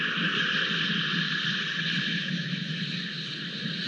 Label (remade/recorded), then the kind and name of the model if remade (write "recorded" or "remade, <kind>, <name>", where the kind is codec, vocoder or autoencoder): recorded